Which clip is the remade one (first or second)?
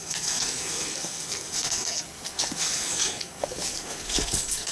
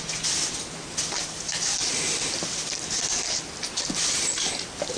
first